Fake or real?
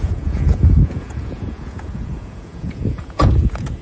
fake